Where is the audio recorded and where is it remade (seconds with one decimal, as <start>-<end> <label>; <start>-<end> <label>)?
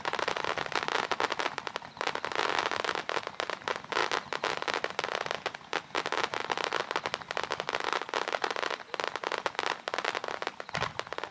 0.0-11.3 recorded